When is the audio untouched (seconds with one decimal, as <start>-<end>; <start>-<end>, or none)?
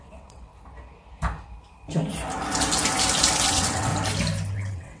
0.5-3.5; 3.9-4.5